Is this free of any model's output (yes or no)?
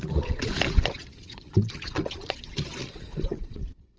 no